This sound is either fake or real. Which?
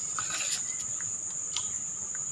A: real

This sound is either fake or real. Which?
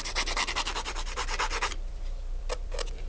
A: fake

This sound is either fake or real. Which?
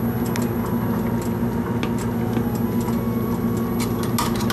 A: real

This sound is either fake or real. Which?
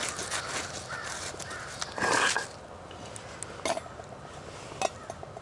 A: real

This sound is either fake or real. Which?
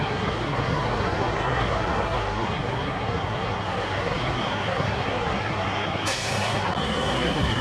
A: fake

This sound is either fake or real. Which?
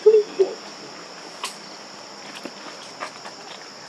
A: real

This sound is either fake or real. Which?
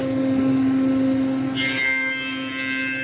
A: real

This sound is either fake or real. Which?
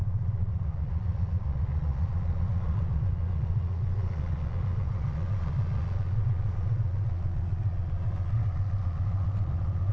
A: fake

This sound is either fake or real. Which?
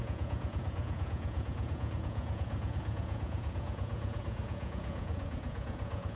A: fake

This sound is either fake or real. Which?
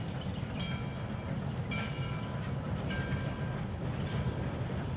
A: real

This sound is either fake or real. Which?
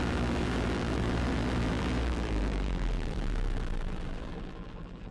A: fake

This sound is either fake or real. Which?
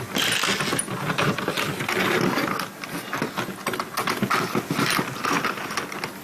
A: real